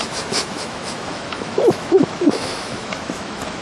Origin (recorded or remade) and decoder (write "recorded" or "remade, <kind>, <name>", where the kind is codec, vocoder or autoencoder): remade, autoencoder, DAC-VAE